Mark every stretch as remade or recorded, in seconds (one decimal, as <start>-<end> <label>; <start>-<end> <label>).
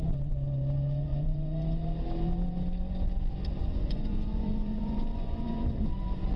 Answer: 0.0-1.1 recorded; 1.1-1.8 remade; 1.8-3.6 recorded; 3.6-5.9 remade; 5.9-6.4 recorded